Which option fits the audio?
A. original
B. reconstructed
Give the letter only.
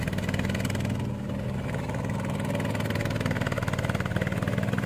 A